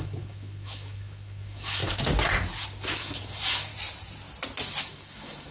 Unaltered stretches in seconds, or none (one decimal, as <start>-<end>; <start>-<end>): 1.8-3.0; 3.7-4.8